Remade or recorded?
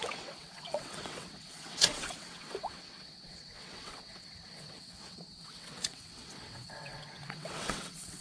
remade